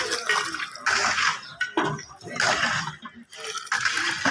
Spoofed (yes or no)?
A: no